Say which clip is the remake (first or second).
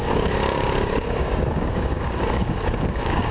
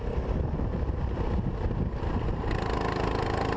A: first